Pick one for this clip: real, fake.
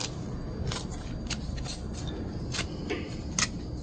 real